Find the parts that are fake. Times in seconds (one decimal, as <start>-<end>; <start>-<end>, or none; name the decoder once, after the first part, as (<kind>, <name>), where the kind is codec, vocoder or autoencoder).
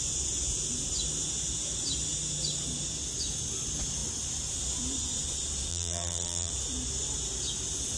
5.7-6.5 (vocoder, BigVGAN v2)